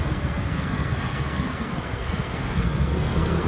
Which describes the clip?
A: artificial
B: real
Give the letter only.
A